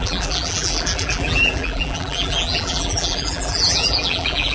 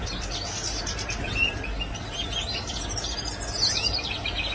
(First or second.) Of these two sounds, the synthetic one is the first